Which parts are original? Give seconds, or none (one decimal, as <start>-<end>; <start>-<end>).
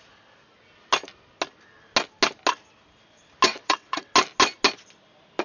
0.0-3.5; 4.1-5.4